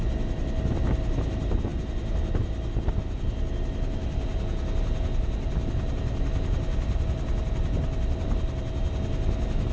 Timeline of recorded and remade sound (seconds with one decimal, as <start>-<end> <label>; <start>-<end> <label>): 0.0-9.7 recorded